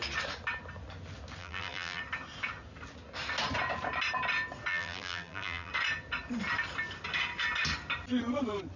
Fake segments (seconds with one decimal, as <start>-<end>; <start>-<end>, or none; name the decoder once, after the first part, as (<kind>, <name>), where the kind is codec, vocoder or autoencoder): 1.4-2.0 (vocoder, BigVGAN v2); 4.7-5.7